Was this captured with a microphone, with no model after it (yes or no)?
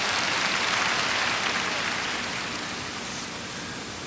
yes